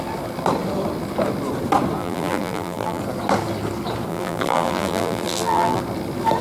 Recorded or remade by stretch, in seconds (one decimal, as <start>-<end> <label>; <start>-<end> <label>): 0.0-2.0 recorded; 2.0-3.0 remade; 3.0-4.1 recorded; 4.1-5.8 remade; 5.8-6.4 recorded